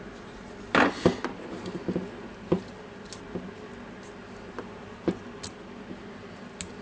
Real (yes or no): yes